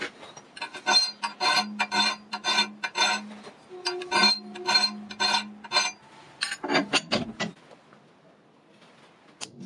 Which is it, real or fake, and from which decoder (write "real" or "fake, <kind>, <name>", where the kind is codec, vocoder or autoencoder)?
real